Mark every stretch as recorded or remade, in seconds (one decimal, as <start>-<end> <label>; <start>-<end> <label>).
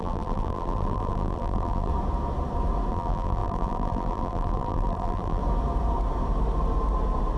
0.0-1.9 remade; 1.9-2.9 recorded; 2.9-5.4 remade; 5.4-7.4 recorded